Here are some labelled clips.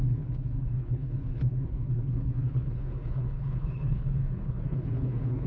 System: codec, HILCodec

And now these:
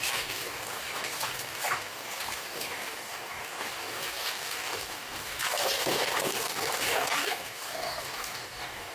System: codec, DAC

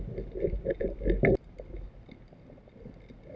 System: none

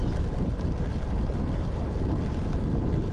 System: none